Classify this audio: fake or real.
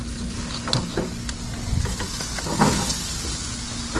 real